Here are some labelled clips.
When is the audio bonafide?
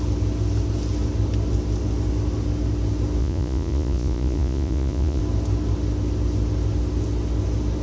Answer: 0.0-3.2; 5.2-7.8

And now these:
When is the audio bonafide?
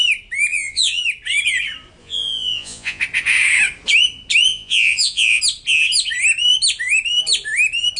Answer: 0.0-0.5; 1.0-2.0; 3.0-4.5; 5.4-8.0